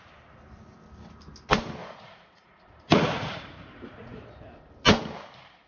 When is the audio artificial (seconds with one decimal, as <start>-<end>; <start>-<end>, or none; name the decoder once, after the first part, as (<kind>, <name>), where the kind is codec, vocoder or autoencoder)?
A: 1.8-4.3 (vocoder, Vocos)